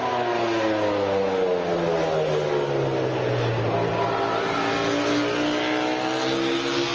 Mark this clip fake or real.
real